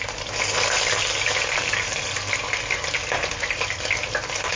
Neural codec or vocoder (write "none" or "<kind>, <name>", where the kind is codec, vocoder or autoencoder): none